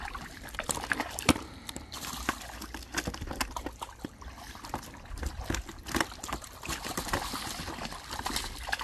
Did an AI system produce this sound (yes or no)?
no